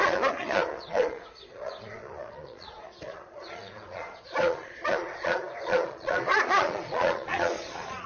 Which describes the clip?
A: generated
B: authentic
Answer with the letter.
A